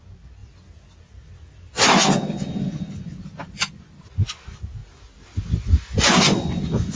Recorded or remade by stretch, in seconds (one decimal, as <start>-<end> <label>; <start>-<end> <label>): 0.0-6.9 recorded